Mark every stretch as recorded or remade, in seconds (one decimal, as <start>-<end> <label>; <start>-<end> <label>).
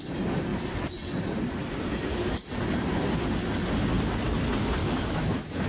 0.0-4.8 recorded; 4.8-5.7 remade